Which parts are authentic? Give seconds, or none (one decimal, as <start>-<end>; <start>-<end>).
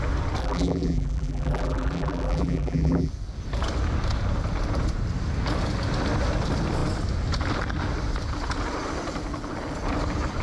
0.0-0.4; 3.1-10.4